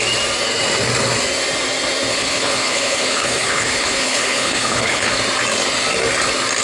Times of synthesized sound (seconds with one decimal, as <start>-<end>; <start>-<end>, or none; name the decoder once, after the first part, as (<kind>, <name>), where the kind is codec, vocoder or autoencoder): 2.1-5.1 (codec, HILCodec)